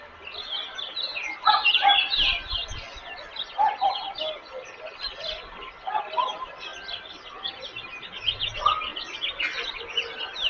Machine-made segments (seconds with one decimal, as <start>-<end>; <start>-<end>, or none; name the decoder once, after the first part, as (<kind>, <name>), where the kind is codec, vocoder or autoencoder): none